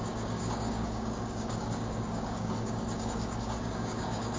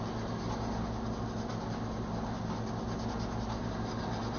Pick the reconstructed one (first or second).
first